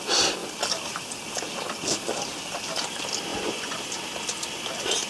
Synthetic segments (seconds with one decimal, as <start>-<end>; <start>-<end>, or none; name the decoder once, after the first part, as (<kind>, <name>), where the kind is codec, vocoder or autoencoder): 3.3-3.8 (vocoder, Vocos)